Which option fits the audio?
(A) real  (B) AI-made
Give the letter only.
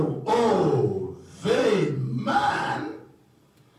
A